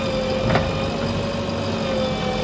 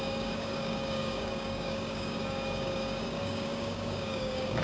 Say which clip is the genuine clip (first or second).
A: first